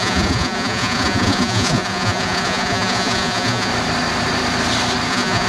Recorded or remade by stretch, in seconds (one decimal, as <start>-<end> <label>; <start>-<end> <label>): 0.0-3.7 remade; 3.7-5.1 recorded; 5.1-5.5 remade